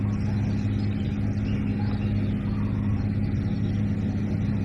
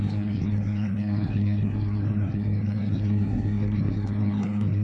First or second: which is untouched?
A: first